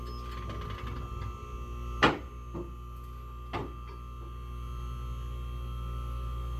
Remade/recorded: recorded